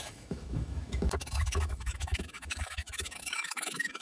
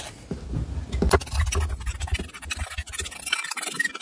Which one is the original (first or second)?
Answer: second